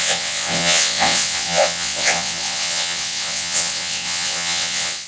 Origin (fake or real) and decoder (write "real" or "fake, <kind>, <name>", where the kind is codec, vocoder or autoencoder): fake, vocoder, WaveNeXt